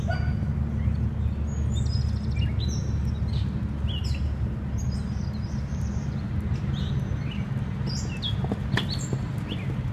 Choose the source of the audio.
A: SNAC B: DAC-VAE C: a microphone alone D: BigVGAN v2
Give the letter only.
C